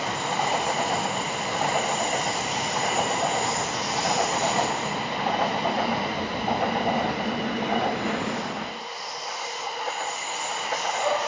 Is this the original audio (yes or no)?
yes